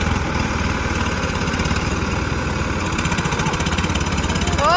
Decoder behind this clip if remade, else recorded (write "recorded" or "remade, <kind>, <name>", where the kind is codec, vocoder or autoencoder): recorded